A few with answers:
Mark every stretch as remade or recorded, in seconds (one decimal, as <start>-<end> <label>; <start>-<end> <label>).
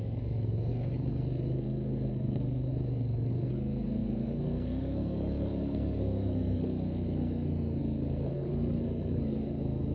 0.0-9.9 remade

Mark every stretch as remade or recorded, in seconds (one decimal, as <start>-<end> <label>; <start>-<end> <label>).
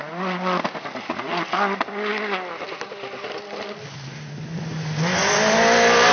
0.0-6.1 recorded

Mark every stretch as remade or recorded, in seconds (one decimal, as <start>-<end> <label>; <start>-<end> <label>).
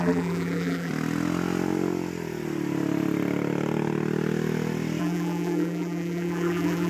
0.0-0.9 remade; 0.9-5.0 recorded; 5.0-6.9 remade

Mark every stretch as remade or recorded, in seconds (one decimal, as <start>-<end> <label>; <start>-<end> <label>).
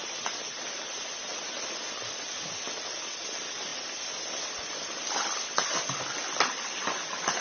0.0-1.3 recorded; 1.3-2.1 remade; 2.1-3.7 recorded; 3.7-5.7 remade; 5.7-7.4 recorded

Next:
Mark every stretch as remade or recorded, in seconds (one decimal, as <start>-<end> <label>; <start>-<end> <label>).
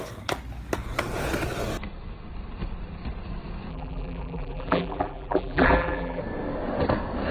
0.0-3.7 recorded; 3.7-6.2 remade; 6.2-7.3 recorded